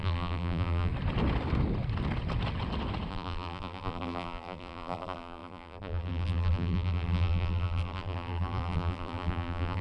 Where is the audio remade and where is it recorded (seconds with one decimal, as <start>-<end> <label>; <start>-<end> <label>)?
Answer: 0.0-0.9 remade; 0.9-3.1 recorded; 3.1-9.8 remade